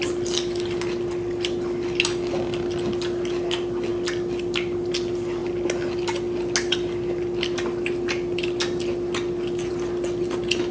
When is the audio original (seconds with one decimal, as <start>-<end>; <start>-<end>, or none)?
0.0-10.7